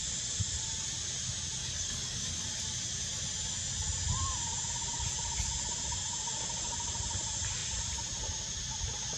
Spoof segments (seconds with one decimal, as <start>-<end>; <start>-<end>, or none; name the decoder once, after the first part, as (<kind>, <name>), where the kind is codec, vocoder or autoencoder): 1.6-2.4 (codec, DAC)